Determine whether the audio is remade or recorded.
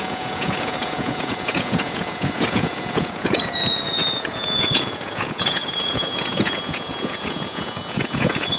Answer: remade